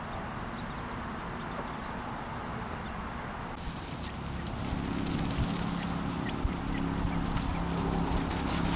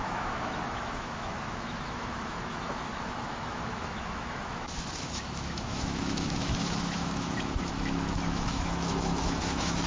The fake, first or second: second